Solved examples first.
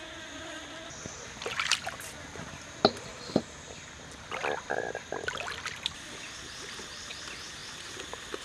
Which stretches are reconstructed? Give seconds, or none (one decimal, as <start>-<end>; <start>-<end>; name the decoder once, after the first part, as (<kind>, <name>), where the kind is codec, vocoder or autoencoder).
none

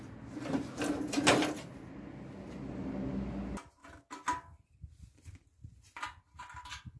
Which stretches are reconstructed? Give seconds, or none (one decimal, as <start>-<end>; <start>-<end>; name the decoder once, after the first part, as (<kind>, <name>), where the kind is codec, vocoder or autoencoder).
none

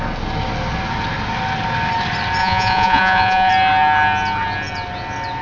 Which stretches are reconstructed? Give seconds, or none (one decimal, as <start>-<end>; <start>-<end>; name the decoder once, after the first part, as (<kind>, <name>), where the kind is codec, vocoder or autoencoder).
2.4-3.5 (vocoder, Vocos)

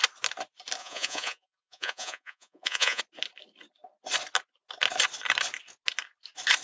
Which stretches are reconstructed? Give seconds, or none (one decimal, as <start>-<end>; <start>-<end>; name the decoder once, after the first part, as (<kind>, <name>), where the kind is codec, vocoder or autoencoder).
0.8-3.0 (vocoder, Vocos)

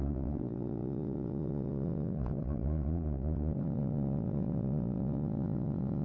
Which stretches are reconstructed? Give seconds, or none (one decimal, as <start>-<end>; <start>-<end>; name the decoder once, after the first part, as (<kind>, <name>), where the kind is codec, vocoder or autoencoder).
0.0-6.0 (vocoder, Vocos)

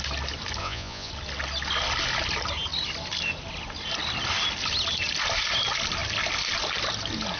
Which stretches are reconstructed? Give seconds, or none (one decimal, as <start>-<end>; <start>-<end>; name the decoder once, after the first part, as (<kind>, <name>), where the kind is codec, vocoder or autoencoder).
0.6-1.1 (vocoder, Vocos)